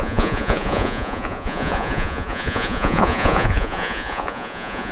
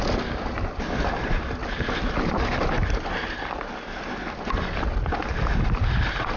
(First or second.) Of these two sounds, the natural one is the second